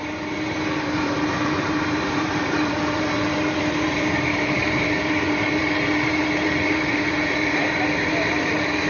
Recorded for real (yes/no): no